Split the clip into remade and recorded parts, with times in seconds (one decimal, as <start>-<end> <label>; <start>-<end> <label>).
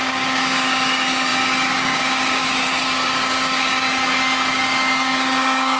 0.0-5.8 remade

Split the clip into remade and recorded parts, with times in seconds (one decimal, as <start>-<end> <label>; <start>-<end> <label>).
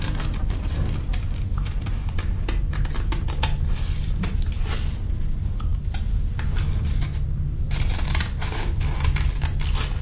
0.0-10.0 recorded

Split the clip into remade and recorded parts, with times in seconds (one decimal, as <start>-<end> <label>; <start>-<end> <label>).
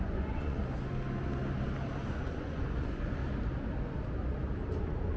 0.0-0.6 remade; 0.6-2.1 recorded; 2.1-3.2 remade; 3.2-4.8 recorded; 4.8-5.2 remade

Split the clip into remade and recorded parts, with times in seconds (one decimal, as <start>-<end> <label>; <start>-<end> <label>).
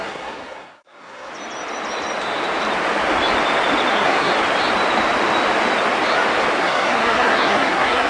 0.0-1.3 remade; 1.3-3.9 recorded; 3.9-4.3 remade; 4.3-6.6 recorded; 6.6-8.1 remade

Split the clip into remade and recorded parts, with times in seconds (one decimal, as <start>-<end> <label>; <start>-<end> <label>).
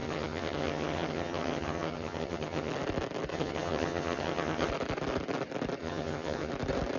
0.0-2.7 remade; 2.7-3.3 recorded; 3.3-4.7 remade; 4.7-5.8 recorded; 5.8-6.5 remade; 6.5-7.0 recorded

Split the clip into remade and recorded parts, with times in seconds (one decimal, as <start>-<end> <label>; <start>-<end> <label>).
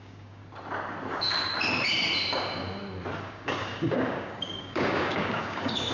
0.0-0.4 remade; 0.4-3.2 recorded; 3.2-5.9 remade